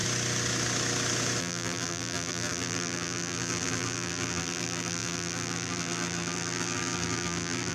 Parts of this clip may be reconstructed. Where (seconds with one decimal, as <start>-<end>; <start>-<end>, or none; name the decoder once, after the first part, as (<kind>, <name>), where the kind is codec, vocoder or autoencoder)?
1.4-7.7 (vocoder, BigVGAN v2)